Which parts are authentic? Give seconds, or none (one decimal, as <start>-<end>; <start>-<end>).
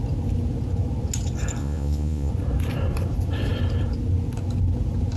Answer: 0.0-1.6; 2.3-5.2